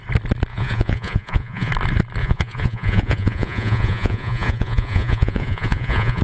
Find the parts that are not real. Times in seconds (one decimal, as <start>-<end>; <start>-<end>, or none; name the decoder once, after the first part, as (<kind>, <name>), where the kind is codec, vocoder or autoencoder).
0.5-1.7 (vocoder, Vocos); 2.2-6.2